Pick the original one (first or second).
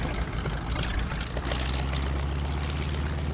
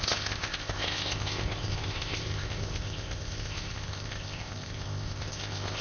first